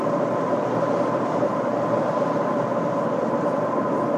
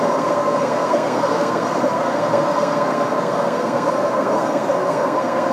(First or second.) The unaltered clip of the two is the first